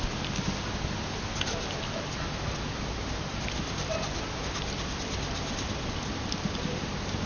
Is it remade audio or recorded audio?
recorded